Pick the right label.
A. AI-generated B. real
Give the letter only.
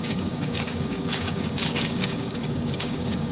A